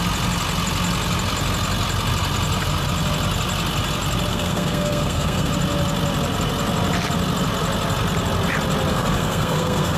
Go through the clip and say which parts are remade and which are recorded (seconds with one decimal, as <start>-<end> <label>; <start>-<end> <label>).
0.0-4.3 recorded; 4.3-5.5 remade; 5.5-8.9 recorded; 8.9-10.0 remade